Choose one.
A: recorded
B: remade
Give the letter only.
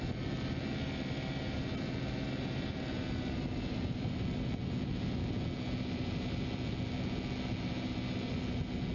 A